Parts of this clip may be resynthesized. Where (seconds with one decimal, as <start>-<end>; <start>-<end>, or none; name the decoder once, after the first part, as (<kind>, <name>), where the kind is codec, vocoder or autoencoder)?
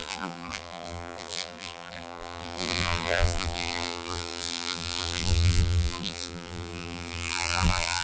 0.0-8.0 (vocoder, BigVGAN v2)